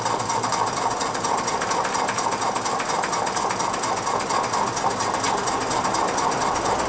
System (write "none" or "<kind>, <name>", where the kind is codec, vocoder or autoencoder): none